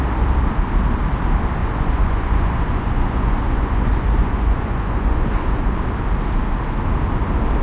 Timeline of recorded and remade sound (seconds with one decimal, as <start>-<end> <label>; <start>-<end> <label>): 0.0-1.6 recorded; 1.6-5.7 remade; 5.7-7.6 recorded